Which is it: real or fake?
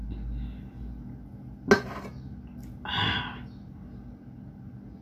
real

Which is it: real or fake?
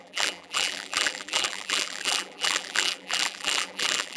fake